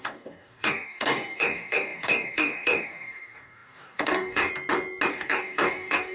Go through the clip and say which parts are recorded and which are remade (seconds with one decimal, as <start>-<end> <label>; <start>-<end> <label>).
0.0-4.5 remade; 4.5-5.1 recorded; 5.1-6.1 remade